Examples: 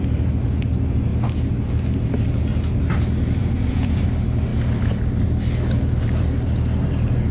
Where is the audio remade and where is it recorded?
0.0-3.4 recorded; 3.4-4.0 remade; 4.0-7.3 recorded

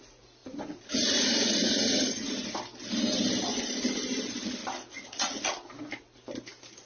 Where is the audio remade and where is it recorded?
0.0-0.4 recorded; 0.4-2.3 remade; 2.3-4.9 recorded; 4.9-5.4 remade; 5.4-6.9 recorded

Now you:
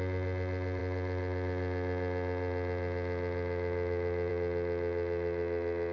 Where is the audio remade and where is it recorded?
0.0-5.9 recorded

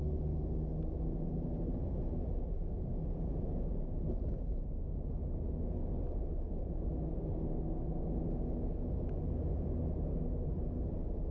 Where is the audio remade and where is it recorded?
0.0-11.3 recorded

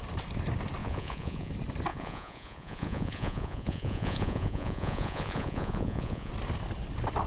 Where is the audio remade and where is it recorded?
0.0-0.8 recorded; 0.8-1.5 remade; 1.5-1.9 recorded; 1.9-6.3 remade; 6.3-7.3 recorded

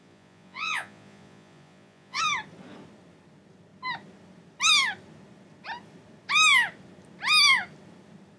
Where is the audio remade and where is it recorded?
0.0-2.2 remade; 2.2-8.4 recorded

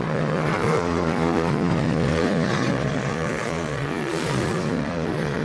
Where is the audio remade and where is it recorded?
0.0-5.4 remade